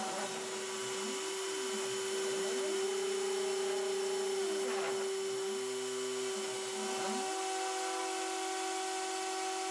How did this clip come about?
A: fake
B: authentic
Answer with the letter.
B